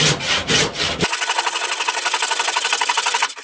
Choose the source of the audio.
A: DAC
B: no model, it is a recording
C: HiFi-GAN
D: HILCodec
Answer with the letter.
B